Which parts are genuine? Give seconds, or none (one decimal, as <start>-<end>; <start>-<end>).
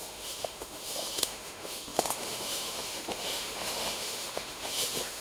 none